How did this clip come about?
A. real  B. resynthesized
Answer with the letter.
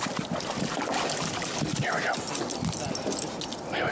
A